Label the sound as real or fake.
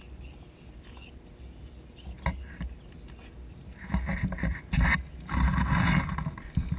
real